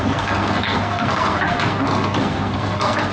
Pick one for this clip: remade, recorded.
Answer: remade